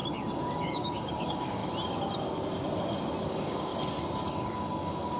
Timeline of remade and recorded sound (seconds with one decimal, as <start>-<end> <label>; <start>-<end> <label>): 0.0-1.6 remade; 1.6-3.3 recorded; 3.3-3.7 remade; 3.7-4.3 recorded; 4.3-5.2 remade